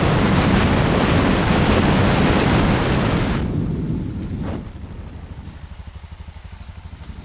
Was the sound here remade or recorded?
recorded